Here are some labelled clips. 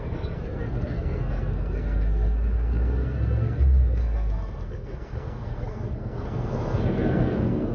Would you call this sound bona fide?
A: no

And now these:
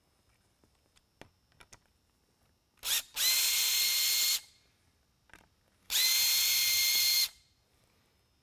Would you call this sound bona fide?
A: yes